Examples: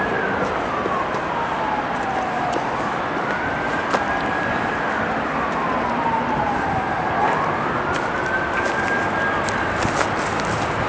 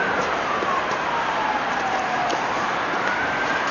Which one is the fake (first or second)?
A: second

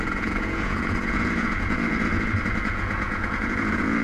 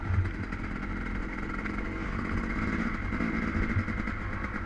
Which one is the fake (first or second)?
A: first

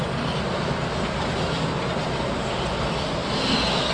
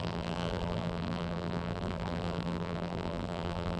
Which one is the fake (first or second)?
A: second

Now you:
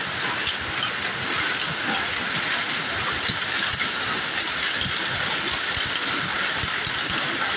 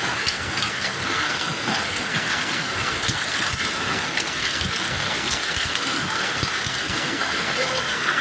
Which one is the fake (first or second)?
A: second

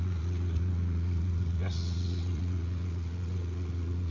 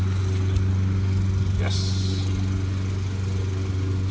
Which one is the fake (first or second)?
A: first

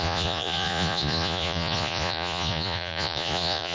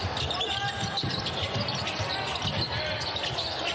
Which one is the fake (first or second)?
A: first